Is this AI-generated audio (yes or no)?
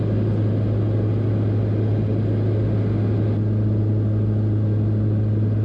no